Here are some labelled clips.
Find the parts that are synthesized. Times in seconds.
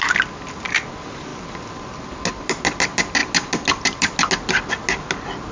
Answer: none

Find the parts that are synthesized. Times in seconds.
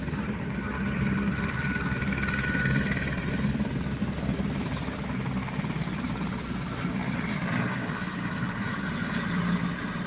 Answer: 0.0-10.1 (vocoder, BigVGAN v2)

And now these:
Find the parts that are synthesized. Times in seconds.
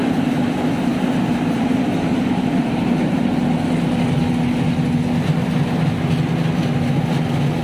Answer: 0.9-3.2 (vocoder, BigVGAN v2)